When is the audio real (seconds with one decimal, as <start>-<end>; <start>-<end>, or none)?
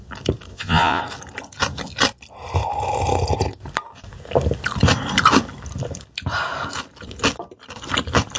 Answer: 0.0-0.5; 1.0-8.4